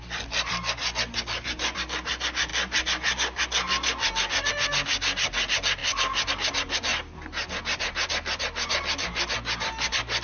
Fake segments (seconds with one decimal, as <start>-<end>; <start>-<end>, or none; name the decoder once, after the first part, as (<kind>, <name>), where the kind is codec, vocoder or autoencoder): none